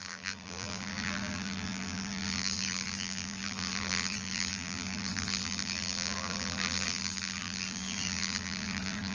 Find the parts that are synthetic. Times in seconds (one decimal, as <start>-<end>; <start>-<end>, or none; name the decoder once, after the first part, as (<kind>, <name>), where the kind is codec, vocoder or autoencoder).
0.0-9.1 (vocoder, BigVGAN v2)